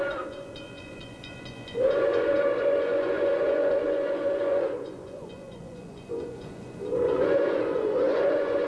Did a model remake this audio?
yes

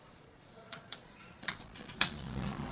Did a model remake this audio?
yes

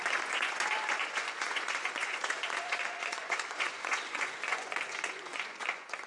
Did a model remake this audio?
yes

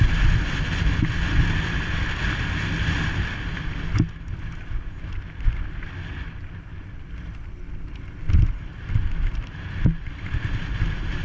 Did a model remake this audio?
no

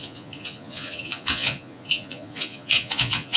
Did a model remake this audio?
yes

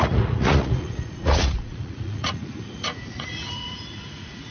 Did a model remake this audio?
yes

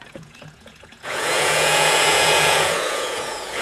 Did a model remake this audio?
yes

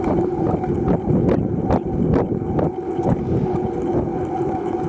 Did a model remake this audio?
no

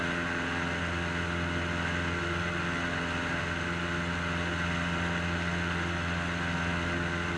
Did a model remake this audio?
no